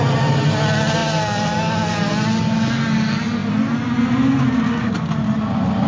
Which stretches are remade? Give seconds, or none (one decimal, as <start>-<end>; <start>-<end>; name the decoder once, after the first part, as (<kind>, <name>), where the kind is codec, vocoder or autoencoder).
none